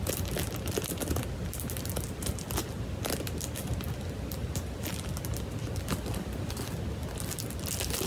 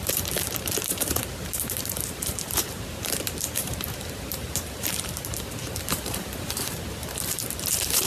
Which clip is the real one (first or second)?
first